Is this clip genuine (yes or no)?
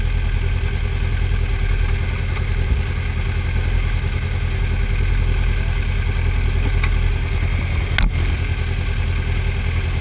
yes